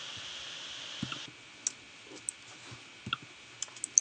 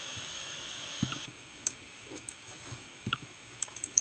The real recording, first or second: first